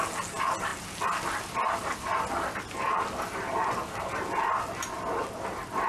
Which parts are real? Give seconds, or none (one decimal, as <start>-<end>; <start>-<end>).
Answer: 0.0-5.9